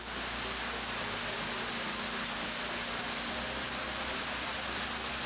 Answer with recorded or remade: recorded